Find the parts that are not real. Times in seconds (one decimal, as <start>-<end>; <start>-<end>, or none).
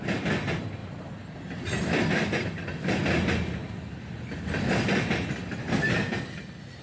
none